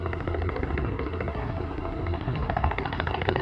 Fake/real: fake